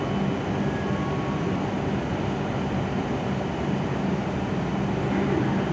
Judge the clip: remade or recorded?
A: recorded